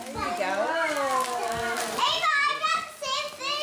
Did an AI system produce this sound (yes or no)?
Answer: no